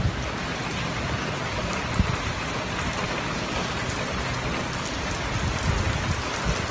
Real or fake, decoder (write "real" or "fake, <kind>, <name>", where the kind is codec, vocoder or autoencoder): real